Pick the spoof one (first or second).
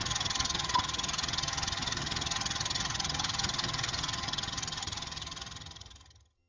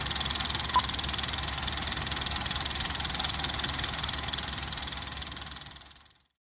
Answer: first